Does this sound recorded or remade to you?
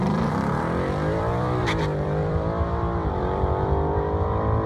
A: remade